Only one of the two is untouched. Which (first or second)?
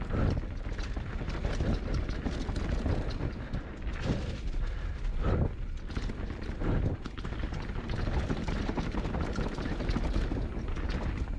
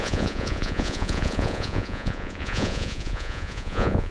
first